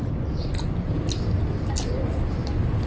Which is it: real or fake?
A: real